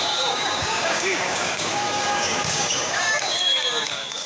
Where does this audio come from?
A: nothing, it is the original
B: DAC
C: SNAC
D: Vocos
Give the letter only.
B